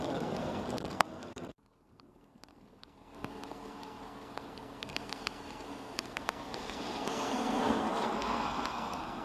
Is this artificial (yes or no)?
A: yes